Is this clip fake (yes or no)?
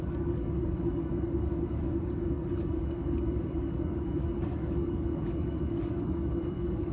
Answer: yes